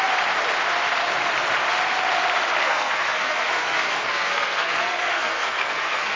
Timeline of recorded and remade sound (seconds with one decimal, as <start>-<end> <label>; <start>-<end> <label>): 0.0-2.6 recorded; 2.6-6.2 remade